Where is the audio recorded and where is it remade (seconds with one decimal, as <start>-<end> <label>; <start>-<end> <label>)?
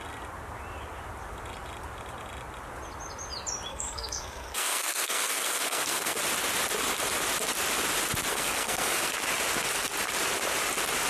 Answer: 0.0-3.7 recorded; 3.7-6.2 remade; 6.2-8.3 recorded; 8.3-9.1 remade; 9.1-11.1 recorded